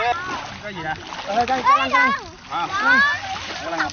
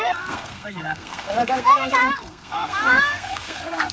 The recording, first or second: first